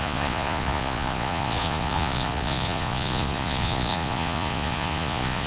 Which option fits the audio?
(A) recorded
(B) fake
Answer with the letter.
B